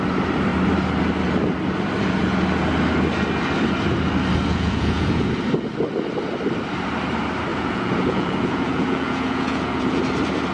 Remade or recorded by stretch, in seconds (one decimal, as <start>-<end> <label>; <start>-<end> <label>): 0.0-4.5 recorded; 4.5-5.3 remade; 5.3-7.5 recorded; 7.5-10.0 remade; 10.0-10.5 recorded